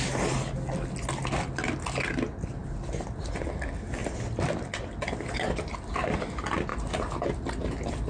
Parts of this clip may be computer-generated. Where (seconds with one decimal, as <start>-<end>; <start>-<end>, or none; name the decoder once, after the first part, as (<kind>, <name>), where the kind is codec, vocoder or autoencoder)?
none